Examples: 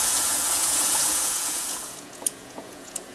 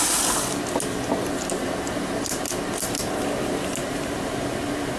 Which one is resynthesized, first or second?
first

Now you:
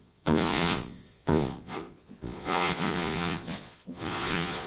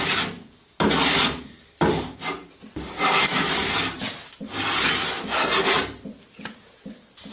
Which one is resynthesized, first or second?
first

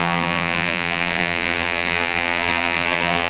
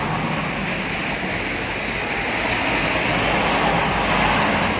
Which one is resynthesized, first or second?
first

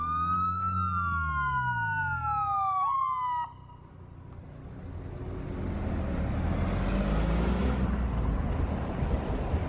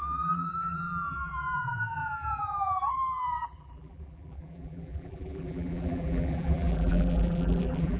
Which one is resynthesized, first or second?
second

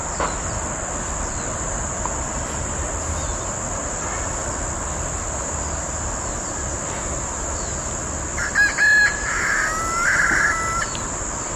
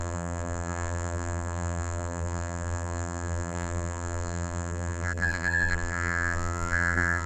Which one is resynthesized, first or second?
second